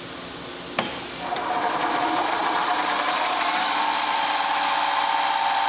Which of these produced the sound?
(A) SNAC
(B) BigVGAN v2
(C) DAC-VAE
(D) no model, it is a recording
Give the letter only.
D